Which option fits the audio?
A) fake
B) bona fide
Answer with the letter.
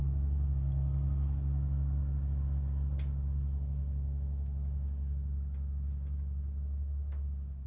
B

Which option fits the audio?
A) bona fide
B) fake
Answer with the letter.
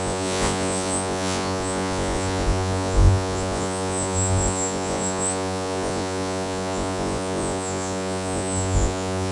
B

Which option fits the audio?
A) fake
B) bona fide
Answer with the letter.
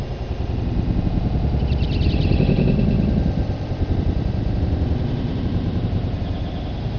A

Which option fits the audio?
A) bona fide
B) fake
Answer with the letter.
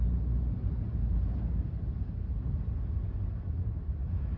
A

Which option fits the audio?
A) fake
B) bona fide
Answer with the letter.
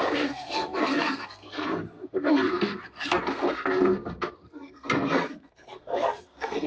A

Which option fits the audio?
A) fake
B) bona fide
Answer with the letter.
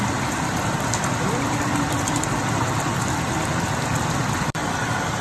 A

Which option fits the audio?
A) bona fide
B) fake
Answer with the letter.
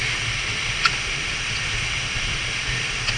A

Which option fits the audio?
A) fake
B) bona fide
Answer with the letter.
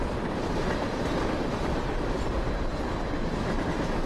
B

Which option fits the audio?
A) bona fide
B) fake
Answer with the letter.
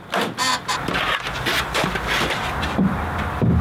A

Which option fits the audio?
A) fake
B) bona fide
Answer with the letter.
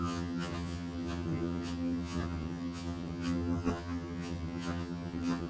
A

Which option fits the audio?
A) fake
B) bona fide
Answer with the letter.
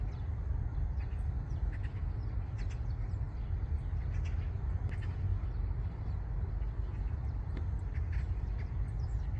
B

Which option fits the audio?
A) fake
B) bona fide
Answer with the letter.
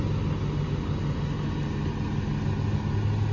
B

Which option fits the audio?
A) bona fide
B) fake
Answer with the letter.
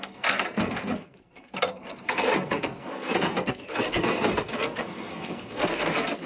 B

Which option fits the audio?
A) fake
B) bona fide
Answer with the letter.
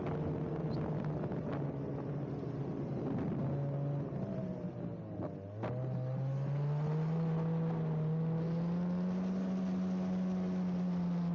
B